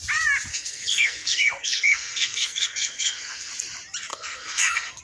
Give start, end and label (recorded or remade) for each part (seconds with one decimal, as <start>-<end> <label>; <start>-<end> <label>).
0.0-0.5 recorded; 0.5-3.5 remade; 3.5-4.1 recorded; 4.1-5.0 remade